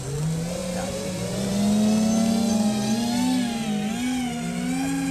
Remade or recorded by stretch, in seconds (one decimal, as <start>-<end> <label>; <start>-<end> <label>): 0.0-0.6 recorded; 0.6-1.5 remade; 1.5-5.1 recorded